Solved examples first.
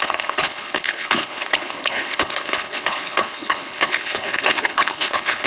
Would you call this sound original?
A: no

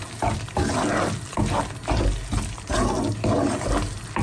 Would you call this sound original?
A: yes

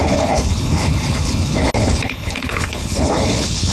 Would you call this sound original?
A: no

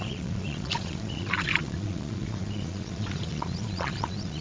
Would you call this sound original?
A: no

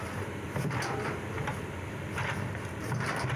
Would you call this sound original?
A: no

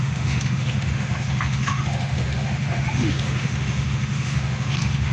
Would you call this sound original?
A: no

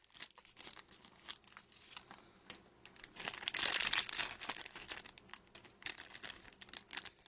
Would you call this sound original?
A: yes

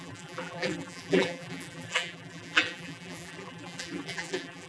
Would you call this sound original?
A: no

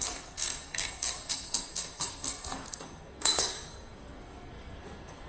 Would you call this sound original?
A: no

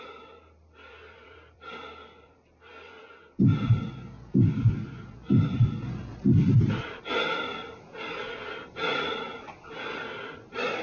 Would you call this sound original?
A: no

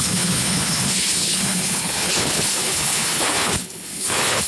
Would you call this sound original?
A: no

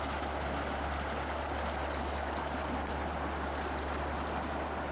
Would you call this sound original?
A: yes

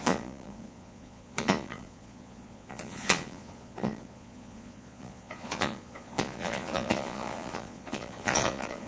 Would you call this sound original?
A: no